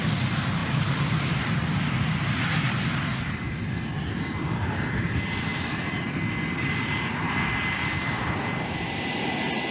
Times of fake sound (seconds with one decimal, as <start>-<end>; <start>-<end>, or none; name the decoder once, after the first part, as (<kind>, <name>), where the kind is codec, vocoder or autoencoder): none